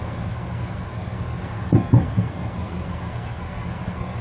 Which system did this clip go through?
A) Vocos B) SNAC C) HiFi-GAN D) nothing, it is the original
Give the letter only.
B